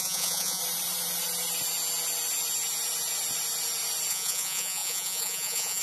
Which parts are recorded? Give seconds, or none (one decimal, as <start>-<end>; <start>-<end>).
0.6-4.1